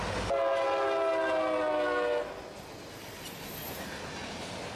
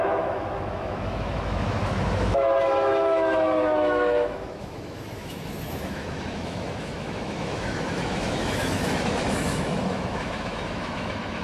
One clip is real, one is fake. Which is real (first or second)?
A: first